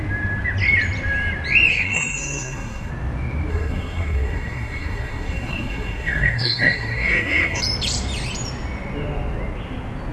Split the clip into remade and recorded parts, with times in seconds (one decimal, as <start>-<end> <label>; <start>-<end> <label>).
0.0-1.7 recorded; 1.7-2.9 remade; 2.9-3.5 recorded; 3.5-7.6 remade; 7.6-10.1 recorded